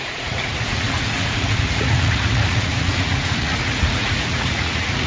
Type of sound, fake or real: fake